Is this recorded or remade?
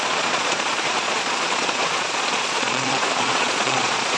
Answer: remade